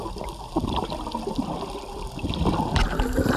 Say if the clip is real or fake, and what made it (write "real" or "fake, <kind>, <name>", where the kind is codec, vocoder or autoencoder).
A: real